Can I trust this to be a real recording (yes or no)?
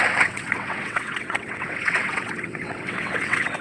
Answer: no